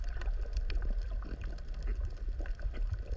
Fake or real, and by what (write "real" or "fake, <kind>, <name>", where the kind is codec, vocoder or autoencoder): real